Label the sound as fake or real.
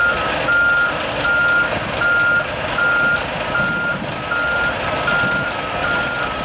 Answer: real